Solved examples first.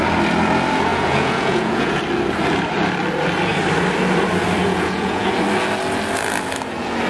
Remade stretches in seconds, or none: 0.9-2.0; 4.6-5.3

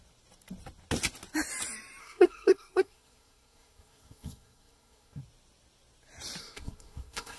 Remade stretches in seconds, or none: 2.0-5.2; 6.4-7.4

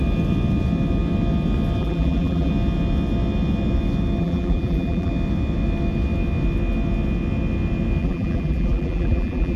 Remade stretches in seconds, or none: 1.8-2.5; 4.2-5.1; 8.0-9.6

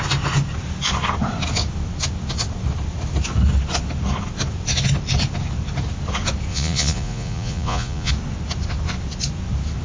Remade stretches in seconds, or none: 6.5-8.1

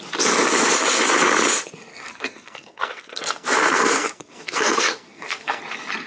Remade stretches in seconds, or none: 1.9-5.6

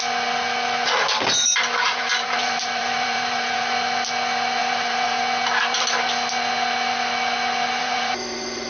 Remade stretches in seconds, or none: 1.8-3.7; 4.6-5.2; 7.8-8.7